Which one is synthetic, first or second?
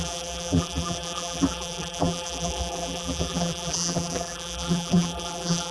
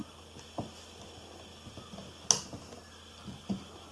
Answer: first